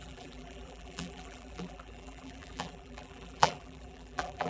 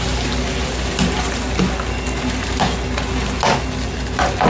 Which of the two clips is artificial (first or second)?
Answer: first